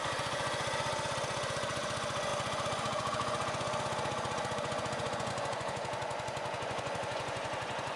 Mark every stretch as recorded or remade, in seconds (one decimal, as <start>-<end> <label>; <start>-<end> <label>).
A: 0.0-8.0 remade